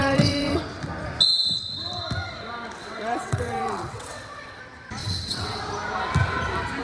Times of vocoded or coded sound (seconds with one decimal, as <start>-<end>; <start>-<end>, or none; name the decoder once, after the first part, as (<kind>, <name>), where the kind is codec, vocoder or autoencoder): 0.0-0.6 (vocoder, WaveNeXt); 2.8-4.6; 5.0-5.6